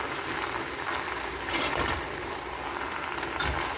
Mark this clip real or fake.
real